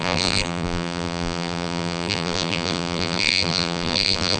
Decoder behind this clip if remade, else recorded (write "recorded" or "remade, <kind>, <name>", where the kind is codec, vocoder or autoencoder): remade, vocoder, BigVGAN v2